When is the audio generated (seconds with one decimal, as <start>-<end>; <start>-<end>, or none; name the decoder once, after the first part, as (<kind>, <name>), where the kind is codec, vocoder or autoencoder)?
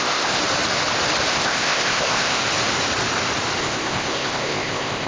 0.0-0.4 (codec, ZipCodec); 1.3-2.4; 3.6-5.1